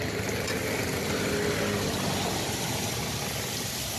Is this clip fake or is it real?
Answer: real